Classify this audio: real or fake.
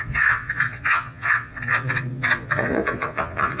fake